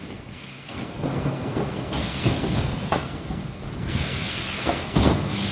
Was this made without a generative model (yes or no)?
no